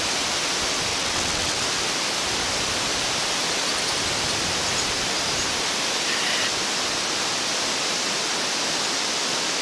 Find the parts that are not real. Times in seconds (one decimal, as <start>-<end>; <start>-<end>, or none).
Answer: 0.9-1.6